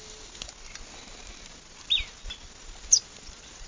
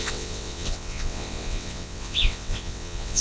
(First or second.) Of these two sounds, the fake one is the second